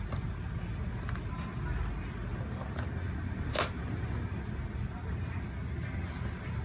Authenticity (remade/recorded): recorded